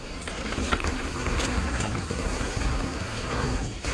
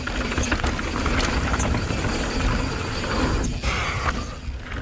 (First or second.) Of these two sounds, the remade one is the first